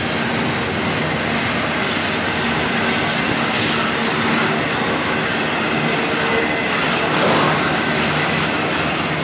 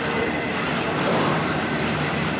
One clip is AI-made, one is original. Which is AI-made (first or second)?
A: second